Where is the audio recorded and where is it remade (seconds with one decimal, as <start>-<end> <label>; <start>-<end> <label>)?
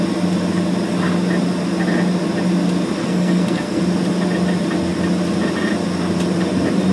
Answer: 0.0-3.0 recorded; 3.0-3.8 remade; 3.8-6.9 recorded